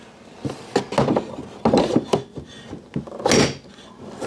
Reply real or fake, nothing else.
real